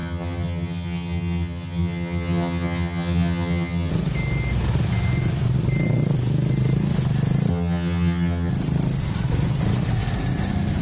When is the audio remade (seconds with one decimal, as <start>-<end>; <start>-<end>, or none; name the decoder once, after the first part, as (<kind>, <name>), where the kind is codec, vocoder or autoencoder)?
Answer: 0.0-3.9 (vocoder, HiFi-GAN); 7.5-8.5

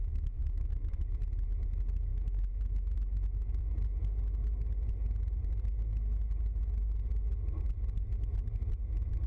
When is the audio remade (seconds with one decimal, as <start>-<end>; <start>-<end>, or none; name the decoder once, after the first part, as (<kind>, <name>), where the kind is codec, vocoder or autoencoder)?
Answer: 0.4-1.0 (autoencoder, DAC-VAE); 2.1-3.6

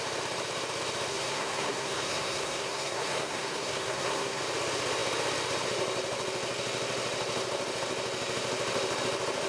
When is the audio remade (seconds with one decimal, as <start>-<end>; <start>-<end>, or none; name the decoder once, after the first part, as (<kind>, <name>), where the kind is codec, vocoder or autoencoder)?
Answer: 1.1-4.4 (codec, SNAC)

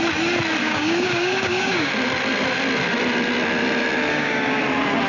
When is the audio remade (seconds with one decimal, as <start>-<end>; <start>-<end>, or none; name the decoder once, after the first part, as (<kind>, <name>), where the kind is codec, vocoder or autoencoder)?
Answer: 0.6-1.9 (codec, DAC); 4.1-4.6

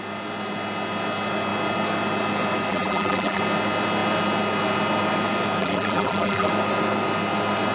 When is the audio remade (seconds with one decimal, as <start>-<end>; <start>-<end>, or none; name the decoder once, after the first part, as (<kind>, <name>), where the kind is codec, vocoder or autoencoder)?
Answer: 2.7-3.4 (vocoder, BigVGAN v2); 5.6-6.5